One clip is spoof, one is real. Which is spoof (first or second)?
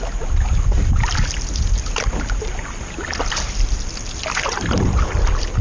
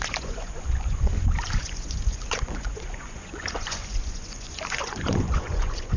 second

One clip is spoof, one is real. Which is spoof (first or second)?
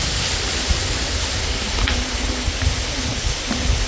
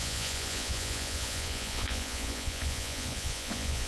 second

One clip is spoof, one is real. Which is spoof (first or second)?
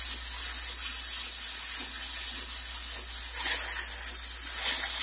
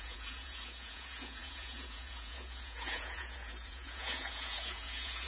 second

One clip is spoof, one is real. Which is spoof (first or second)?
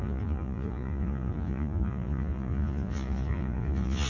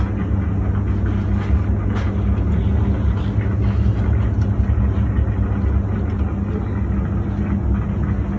first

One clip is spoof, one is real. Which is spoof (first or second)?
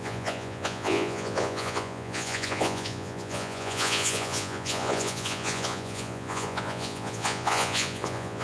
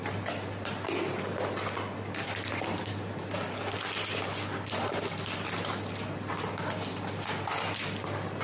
first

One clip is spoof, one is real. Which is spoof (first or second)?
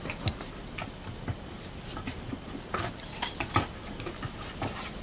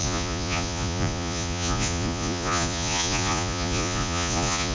second